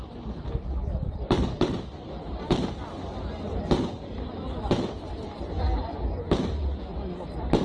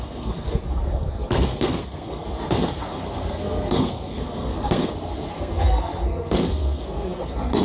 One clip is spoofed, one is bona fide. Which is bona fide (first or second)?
first